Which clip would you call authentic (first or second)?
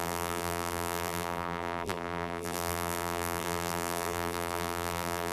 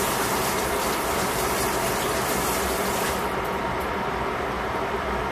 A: second